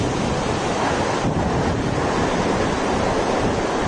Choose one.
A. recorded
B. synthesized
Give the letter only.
A